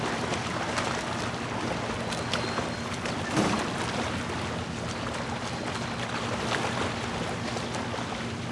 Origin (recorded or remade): recorded